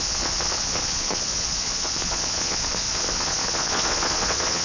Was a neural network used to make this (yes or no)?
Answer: yes